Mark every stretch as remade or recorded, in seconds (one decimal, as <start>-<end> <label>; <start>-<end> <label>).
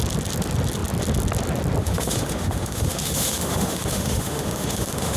0.0-1.8 recorded; 1.8-5.2 remade